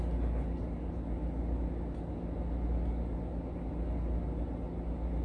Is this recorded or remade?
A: recorded